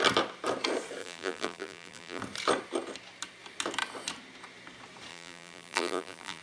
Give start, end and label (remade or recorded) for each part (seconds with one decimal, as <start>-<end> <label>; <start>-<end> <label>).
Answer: 0.0-1.0 recorded; 1.0-2.2 remade; 2.2-5.1 recorded; 5.1-6.4 remade